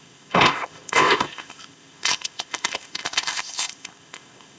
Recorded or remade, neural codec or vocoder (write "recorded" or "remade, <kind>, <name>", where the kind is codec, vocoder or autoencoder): remade, codec, ZipCodec